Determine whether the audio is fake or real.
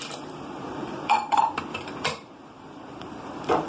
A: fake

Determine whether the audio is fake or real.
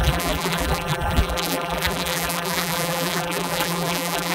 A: fake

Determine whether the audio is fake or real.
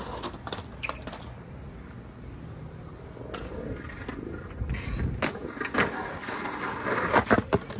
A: real